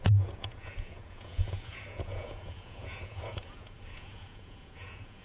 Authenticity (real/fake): fake